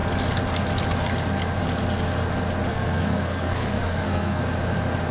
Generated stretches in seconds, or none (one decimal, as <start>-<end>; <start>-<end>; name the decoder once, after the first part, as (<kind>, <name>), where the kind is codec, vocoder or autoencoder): 2.7-4.4 (codec, SNAC)